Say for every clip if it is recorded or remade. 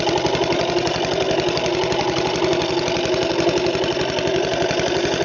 recorded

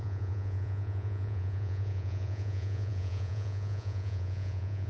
remade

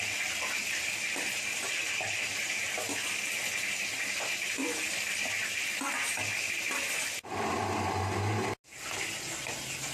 recorded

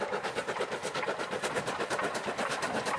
recorded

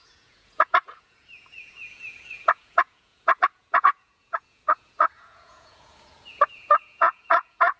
remade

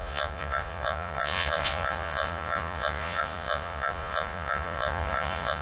remade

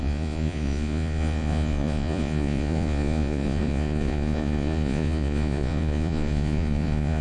remade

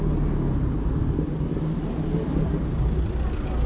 recorded